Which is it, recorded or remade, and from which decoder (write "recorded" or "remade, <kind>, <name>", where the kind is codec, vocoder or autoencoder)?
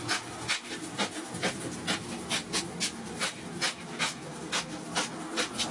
recorded